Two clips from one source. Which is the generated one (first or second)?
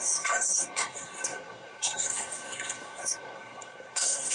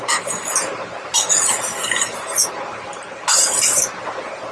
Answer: first